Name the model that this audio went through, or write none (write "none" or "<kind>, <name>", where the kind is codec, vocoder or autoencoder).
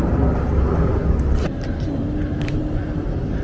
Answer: none